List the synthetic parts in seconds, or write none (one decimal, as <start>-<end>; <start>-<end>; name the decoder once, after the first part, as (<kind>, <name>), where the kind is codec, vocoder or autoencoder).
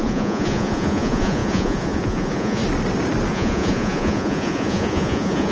0.0-2.6 (vocoder, Vocos); 3.3-5.5